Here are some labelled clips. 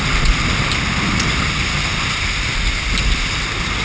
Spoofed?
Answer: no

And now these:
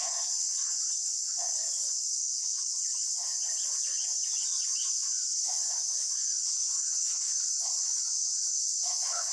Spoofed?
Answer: yes